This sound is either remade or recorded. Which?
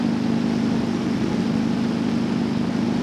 recorded